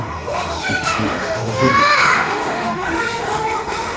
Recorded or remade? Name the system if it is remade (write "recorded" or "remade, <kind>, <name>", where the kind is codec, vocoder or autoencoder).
remade, autoencoder, DAC-VAE